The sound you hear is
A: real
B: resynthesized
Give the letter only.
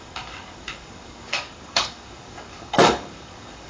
B